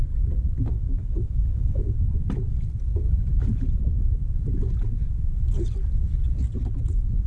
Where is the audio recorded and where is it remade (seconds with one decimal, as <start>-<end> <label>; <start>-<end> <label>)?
0.0-0.7 recorded; 0.7-1.8 remade; 1.8-7.3 recorded